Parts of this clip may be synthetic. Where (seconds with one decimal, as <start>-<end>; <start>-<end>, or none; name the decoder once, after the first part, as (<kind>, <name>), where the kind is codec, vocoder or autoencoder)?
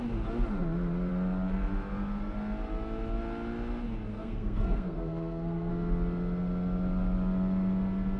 4.1-5.7 (codec, SNAC)